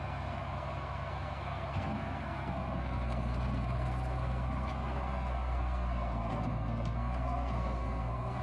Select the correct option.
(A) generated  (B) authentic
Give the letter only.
A